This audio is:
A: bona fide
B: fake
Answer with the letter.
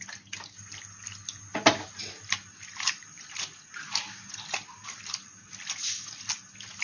A